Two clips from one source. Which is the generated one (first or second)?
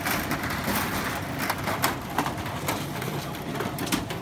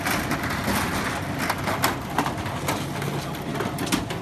first